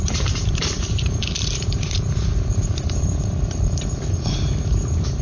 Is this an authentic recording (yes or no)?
no